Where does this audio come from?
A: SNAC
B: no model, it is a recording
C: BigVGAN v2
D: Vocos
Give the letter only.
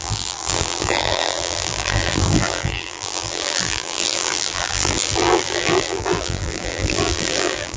C